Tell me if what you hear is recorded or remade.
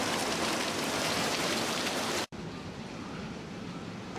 remade